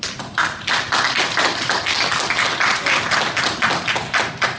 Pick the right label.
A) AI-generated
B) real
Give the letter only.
B